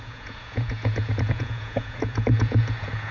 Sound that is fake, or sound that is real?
fake